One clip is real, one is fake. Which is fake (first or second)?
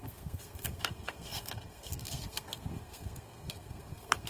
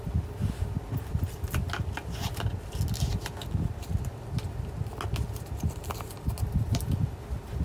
first